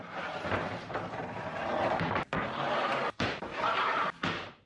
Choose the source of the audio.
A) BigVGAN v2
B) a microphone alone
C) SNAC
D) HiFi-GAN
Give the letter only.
A